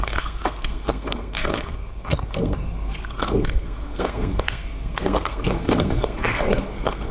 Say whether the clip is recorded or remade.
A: remade